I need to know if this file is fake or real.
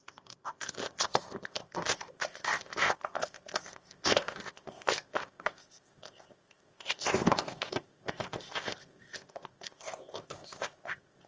fake